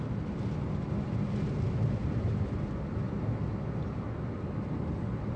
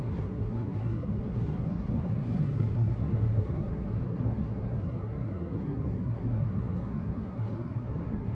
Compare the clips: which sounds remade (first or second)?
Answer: second